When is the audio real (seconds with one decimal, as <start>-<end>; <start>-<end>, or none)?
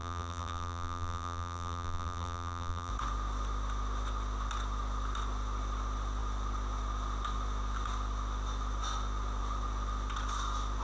2.9-10.8